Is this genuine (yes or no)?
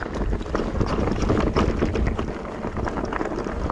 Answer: yes